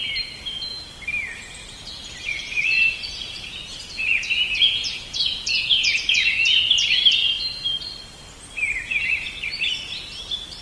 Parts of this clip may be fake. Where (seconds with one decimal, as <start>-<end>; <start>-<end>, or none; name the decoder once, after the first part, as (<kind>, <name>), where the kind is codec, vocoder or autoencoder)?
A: 1.6-6.4 (vocoder, Vocos)